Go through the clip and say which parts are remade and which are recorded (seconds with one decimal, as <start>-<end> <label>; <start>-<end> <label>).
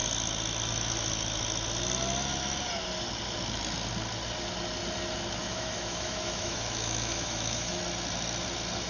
0.0-5.4 recorded; 5.4-7.8 remade; 7.8-8.9 recorded